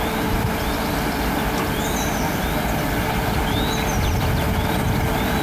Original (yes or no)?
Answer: no